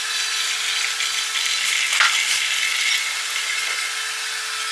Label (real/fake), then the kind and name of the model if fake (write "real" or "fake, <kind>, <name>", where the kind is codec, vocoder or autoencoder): real